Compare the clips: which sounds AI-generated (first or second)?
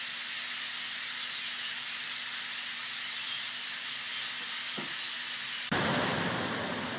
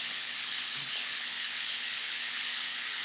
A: second